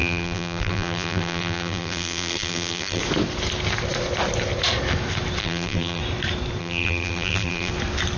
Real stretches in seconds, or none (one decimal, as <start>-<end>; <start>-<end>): 3.0-5.4; 6.0-6.6; 7.7-8.2